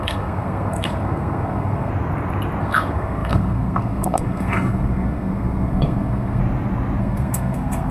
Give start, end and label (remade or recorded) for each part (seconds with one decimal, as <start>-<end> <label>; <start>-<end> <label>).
0.0-1.9 remade; 1.9-2.6 recorded; 2.6-6.4 remade; 6.4-7.0 recorded; 7.0-7.9 remade